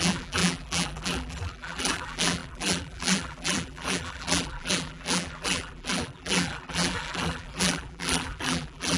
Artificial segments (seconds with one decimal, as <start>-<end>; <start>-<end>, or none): 0.0-9.0